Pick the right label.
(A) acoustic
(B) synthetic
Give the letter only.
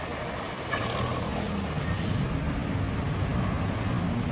A